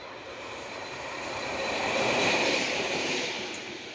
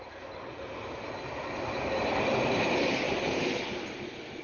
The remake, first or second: first